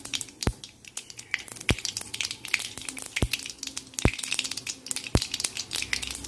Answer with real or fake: real